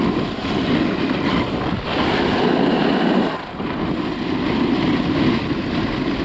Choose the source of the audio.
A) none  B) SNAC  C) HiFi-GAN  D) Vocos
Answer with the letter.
A